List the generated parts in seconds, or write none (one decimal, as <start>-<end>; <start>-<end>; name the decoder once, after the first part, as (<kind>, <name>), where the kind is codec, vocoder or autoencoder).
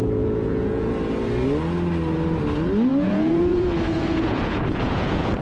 0.0-0.9 (vocoder, Vocos); 2.9-5.4